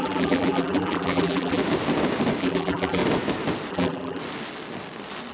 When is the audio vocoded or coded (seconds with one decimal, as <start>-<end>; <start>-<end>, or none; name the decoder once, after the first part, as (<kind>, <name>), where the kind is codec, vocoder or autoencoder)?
0.0-1.6 (vocoder, BigVGAN v2); 2.4-3.0; 3.7-4.2